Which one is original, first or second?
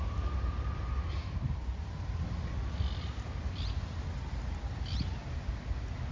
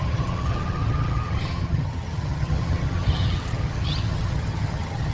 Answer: first